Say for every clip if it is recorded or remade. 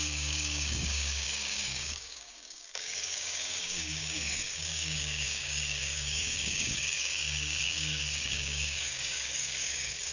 remade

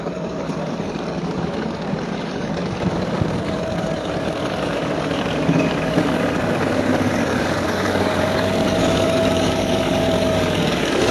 remade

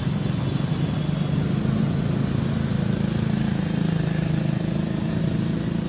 recorded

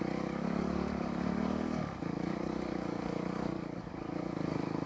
remade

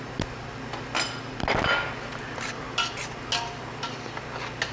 recorded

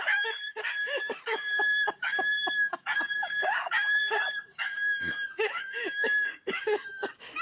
remade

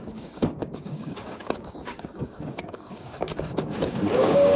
remade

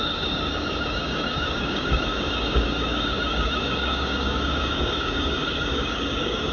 remade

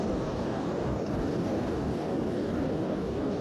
remade